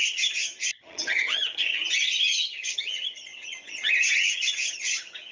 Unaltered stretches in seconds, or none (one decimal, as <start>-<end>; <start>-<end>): none